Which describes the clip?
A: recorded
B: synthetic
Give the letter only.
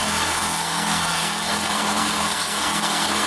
B